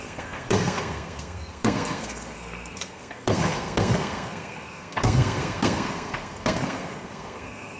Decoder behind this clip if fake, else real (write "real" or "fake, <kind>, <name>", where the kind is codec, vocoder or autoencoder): fake, codec, SNAC